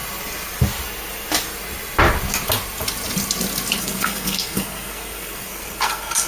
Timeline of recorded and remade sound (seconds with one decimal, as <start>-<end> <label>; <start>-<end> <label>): 0.0-3.8 recorded; 3.8-6.3 remade